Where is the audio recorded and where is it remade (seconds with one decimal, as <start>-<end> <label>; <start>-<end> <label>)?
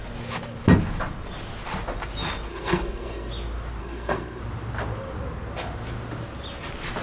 0.0-2.5 recorded; 2.5-3.3 remade; 3.3-3.8 recorded; 3.8-4.4 remade; 4.4-7.0 recorded